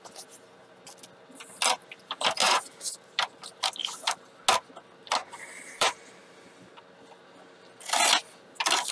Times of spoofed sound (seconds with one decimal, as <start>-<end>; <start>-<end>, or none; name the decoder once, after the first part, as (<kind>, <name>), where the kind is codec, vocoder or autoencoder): 2.4-2.9 (vocoder, BigVGAN v2); 3.8-4.4; 5.2-6.2